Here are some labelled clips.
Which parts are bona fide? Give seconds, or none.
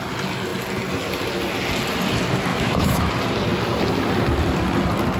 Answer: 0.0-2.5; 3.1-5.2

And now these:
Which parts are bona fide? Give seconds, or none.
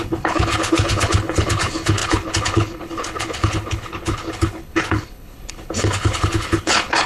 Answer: none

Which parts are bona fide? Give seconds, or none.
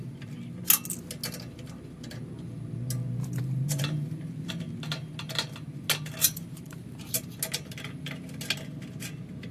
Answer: 0.0-3.2; 4.5-6.2; 7.2-9.5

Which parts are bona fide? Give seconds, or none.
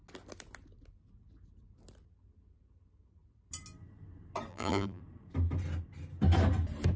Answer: 0.0-4.5; 5.0-7.0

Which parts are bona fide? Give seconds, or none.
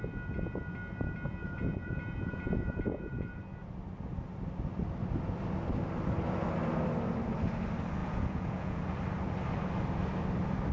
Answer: 0.0-1.4; 3.4-8.0; 8.8-10.7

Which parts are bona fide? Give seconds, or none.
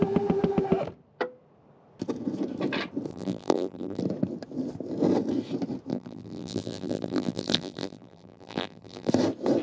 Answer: 0.0-3.1; 4.0-5.9; 9.1-9.6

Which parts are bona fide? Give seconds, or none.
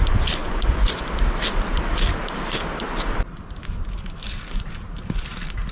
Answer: 0.0-0.4; 1.0-5.7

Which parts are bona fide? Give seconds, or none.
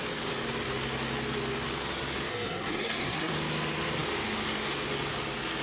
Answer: 0.0-2.3; 3.3-5.6